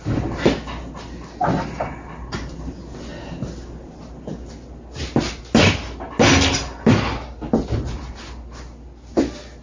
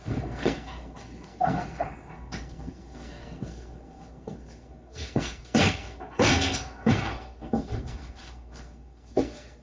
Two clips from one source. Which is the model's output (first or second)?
second